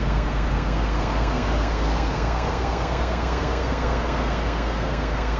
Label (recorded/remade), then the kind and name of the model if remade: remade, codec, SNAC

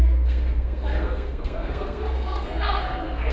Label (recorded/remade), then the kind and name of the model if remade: remade, codec, SNAC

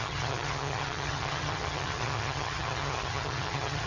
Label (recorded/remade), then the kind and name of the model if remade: remade, vocoder, HiFi-GAN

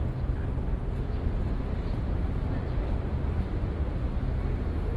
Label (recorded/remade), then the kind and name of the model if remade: recorded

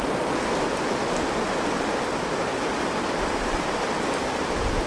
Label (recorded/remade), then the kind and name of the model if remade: remade, vocoder, BigVGAN v2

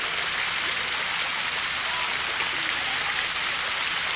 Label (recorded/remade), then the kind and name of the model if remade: recorded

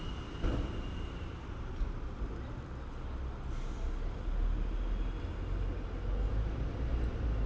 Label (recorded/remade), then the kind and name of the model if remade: recorded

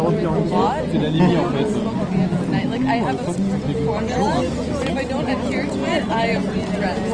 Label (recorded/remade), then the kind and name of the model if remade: recorded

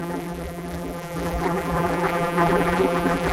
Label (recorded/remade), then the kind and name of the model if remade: remade, vocoder, BigVGAN v2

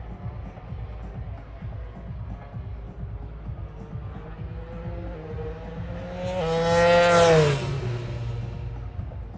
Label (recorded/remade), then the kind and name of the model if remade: recorded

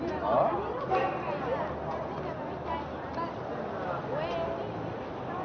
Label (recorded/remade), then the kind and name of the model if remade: recorded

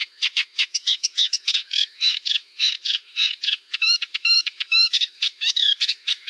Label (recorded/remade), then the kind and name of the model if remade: remade, autoencoder, DAC-VAE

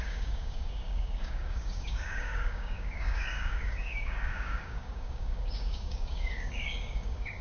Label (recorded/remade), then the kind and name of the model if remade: remade, codec, DAC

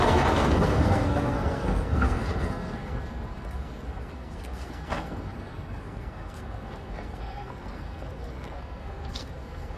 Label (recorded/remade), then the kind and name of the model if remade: remade, codec, SNAC